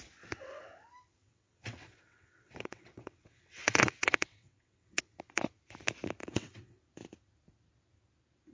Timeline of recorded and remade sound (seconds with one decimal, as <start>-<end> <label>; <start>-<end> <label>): 0.0-1.2 recorded; 1.2-5.0 remade; 5.0-6.2 recorded; 6.2-6.8 remade; 6.8-8.5 recorded